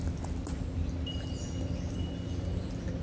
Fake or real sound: real